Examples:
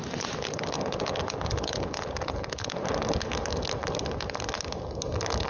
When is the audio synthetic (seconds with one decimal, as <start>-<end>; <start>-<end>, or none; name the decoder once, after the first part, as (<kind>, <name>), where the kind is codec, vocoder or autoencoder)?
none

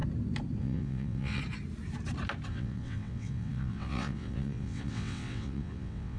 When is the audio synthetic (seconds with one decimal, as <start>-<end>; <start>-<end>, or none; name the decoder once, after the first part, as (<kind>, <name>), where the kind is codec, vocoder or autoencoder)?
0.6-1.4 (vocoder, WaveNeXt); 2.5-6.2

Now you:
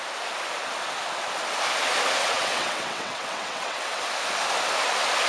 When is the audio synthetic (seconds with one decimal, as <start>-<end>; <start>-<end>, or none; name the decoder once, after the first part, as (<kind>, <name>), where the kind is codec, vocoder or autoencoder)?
2.2-4.0 (vocoder, WaveNeXt)

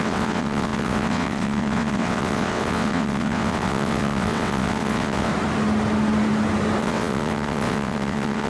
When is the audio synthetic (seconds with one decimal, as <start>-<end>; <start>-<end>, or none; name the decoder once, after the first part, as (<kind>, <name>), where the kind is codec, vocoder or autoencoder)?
0.0-5.3 (vocoder, WaveNeXt); 6.8-8.5

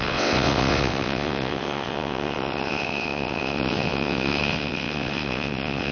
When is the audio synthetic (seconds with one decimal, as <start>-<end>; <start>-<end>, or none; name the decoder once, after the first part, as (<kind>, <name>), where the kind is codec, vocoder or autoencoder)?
0.0-5.9 (vocoder, WaveNeXt)

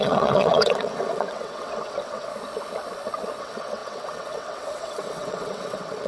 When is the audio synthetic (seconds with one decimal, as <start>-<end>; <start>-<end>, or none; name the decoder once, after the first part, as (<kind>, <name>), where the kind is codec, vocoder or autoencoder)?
0.0-2.3 (vocoder, WaveNeXt); 3.4-6.1

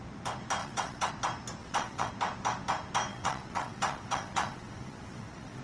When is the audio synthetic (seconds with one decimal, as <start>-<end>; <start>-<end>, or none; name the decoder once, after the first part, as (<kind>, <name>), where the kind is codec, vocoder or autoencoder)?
0.6-1.1 (vocoder, WaveNeXt); 1.6-2.1; 3.1-5.6

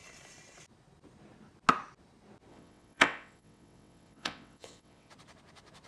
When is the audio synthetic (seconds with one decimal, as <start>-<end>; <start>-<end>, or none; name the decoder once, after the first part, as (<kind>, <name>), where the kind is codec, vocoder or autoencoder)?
2.5-5.1 (vocoder, WaveNeXt)